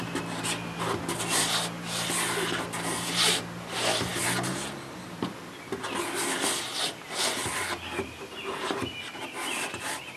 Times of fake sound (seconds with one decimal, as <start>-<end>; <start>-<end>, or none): none